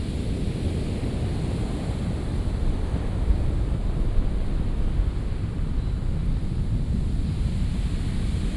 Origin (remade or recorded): recorded